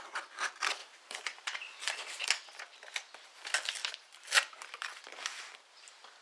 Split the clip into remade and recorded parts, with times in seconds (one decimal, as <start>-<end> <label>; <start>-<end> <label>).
0.0-0.8 recorded; 0.8-2.3 remade; 2.3-6.2 recorded